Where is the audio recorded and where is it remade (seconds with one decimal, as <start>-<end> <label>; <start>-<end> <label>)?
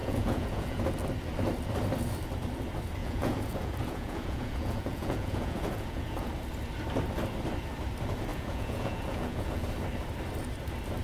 0.0-0.8 remade; 0.8-3.0 recorded; 3.0-6.3 remade; 6.3-8.3 recorded; 8.3-9.6 remade; 9.6-11.0 recorded